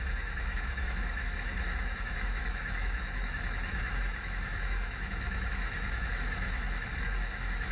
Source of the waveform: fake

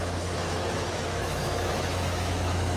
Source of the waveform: fake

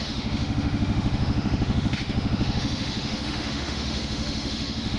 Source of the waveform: fake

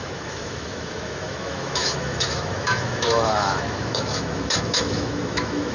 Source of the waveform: fake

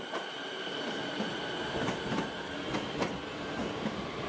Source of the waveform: real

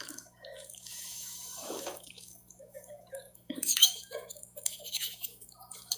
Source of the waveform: fake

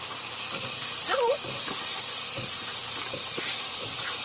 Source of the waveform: real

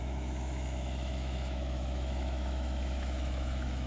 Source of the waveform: fake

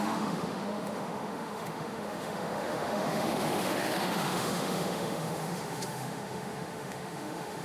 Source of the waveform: fake